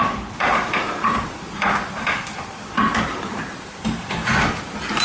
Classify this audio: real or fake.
fake